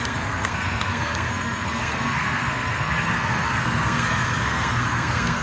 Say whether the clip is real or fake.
fake